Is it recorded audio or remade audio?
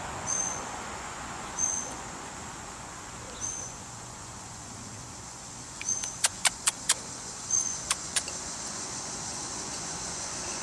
remade